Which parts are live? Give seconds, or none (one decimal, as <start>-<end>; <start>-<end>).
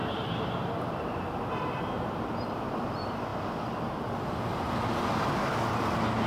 2.5-6.3